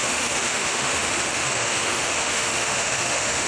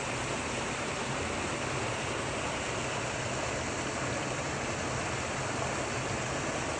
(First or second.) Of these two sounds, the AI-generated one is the first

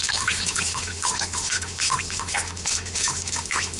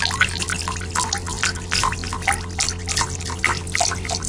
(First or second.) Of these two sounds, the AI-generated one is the first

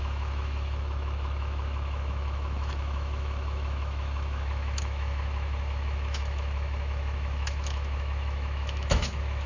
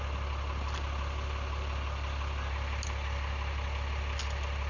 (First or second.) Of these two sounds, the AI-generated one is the first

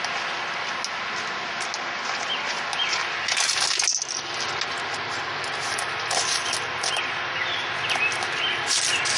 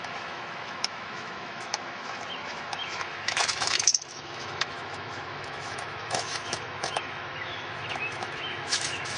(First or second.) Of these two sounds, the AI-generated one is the second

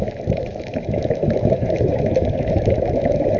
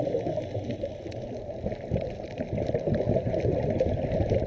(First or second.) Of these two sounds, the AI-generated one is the first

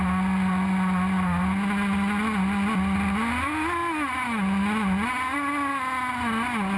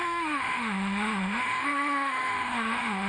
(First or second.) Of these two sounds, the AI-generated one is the second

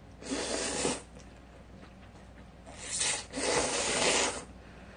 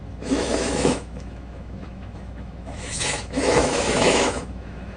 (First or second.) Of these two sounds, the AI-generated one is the second